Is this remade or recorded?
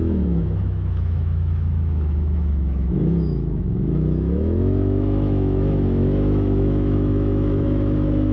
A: remade